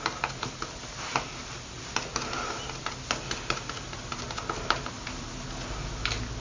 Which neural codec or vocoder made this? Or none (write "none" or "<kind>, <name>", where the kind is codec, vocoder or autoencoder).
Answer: none